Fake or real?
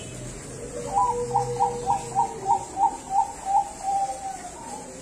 real